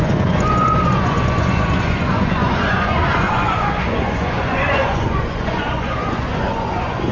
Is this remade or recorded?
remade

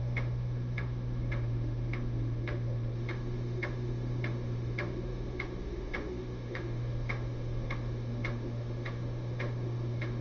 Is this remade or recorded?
remade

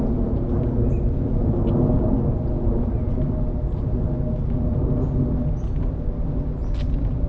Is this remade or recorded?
recorded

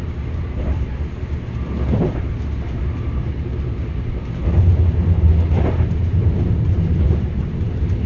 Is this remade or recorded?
remade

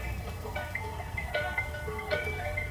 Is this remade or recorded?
remade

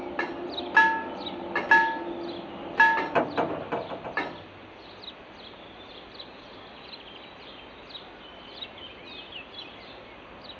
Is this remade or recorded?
recorded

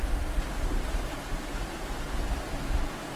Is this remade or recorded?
recorded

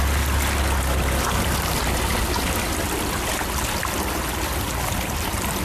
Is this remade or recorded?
recorded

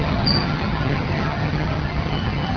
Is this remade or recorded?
remade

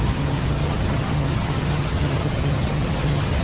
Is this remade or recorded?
remade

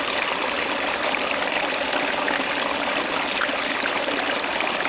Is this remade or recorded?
recorded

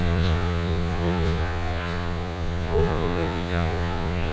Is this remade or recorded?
remade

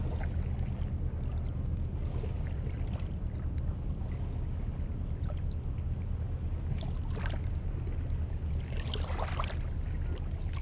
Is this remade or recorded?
recorded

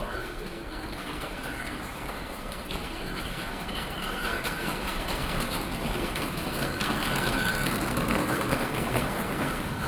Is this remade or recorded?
remade